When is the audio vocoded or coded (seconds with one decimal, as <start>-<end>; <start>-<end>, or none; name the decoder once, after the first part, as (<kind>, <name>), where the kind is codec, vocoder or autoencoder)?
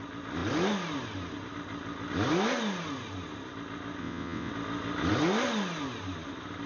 4.0-4.5 (vocoder, WaveNeXt)